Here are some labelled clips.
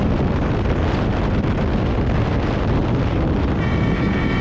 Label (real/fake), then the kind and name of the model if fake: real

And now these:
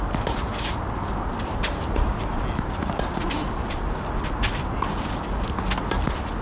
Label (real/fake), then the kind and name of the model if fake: real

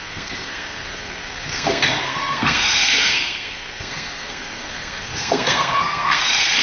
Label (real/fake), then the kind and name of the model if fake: fake, codec, SNAC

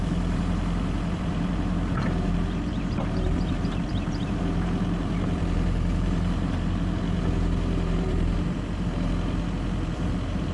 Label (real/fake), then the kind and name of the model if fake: fake, vocoder, BigVGAN v2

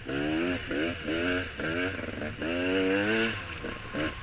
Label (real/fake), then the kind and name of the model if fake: real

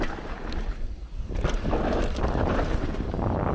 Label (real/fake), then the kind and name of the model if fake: real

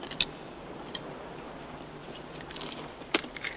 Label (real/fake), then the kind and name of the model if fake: real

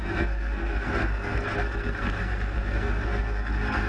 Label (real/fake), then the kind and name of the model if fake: fake, codec, SNAC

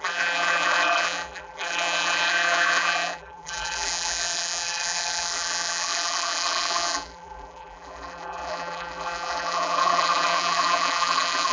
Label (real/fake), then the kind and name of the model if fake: fake, vocoder, BigVGAN v2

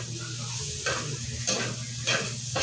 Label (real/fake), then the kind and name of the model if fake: real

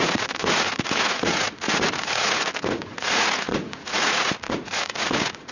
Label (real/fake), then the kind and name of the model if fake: fake, vocoder, Vocos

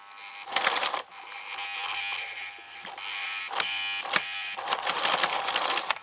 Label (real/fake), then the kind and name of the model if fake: real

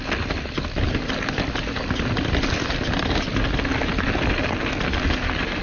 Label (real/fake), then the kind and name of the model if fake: real